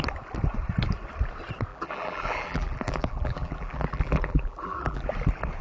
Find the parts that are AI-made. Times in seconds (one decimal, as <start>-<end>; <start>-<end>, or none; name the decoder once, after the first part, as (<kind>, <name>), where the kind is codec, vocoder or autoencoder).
1.7-5.1 (vocoder, BigVGAN v2)